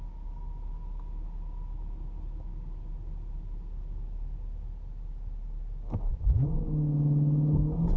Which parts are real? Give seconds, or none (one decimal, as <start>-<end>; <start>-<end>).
0.0-8.0